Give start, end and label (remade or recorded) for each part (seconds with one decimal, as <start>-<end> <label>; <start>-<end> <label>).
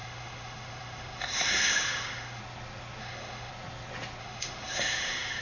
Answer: 0.0-2.4 remade; 2.4-3.0 recorded; 3.0-3.5 remade; 3.5-4.2 recorded; 4.2-5.4 remade